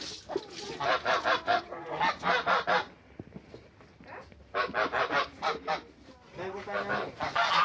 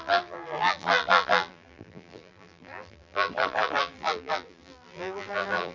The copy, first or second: second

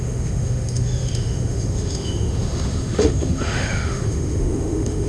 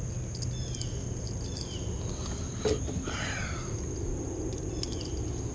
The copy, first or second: first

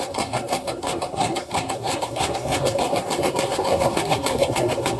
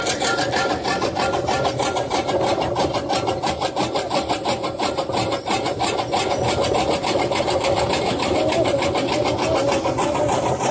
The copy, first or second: first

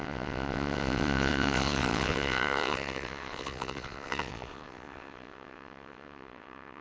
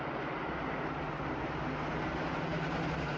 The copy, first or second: first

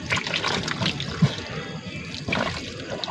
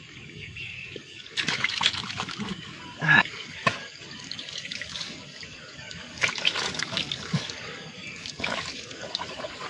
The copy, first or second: second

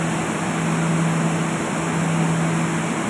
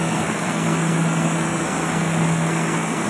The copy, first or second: second